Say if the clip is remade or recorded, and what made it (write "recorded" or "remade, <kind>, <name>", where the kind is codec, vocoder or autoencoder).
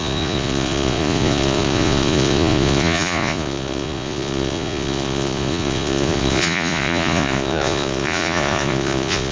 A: remade, vocoder, Vocos